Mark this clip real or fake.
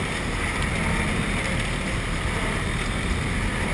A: real